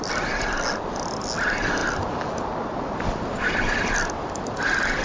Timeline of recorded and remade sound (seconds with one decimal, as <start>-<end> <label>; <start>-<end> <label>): 0.0-5.0 recorded